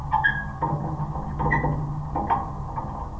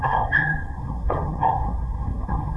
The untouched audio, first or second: first